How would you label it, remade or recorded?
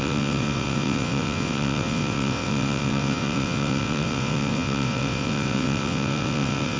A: remade